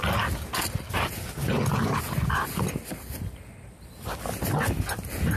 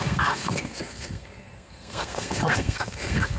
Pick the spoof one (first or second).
second